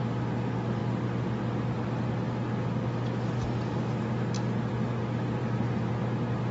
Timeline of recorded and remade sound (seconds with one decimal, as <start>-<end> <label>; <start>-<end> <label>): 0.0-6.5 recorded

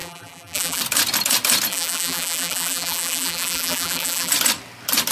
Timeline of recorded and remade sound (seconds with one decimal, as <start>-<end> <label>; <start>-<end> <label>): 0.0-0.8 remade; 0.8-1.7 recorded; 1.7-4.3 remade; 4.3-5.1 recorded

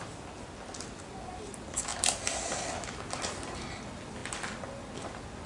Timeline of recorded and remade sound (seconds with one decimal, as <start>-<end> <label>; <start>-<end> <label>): 0.0-5.5 recorded